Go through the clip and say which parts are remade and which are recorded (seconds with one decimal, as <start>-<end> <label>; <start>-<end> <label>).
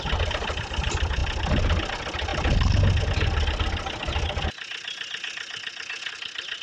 0.0-6.6 recorded